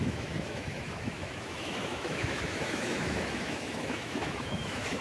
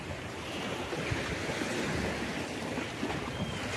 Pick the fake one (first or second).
first